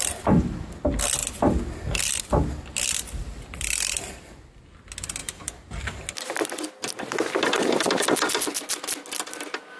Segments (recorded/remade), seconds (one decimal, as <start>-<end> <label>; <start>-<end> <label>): 0.0-3.2 recorded; 3.2-4.3 remade; 4.3-5.2 recorded; 5.2-5.8 remade; 5.8-9.8 recorded